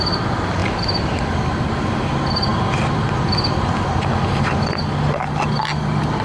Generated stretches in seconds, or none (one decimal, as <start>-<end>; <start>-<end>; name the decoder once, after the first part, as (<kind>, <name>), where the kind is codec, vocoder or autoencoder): none